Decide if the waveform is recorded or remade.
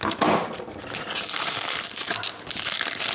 recorded